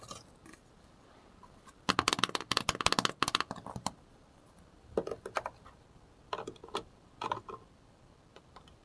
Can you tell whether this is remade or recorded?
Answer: recorded